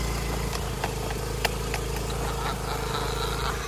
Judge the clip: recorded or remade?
recorded